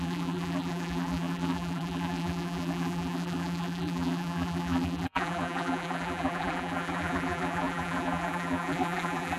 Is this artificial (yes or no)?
yes